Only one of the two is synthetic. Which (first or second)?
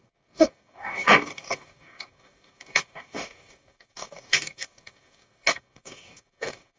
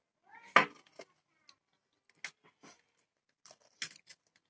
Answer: first